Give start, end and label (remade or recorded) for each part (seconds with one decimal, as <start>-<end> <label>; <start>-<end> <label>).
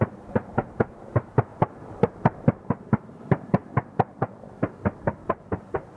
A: 0.0-3.6 remade; 3.6-5.0 recorded; 5.0-6.0 remade